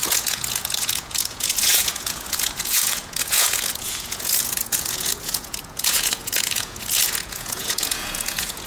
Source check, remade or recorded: remade